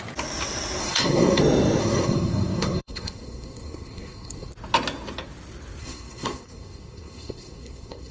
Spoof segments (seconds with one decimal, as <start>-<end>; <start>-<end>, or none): 0.8-1.4; 1.8-4.5; 5.8-8.1